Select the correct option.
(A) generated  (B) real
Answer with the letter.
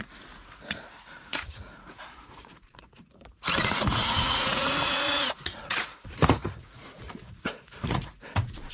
A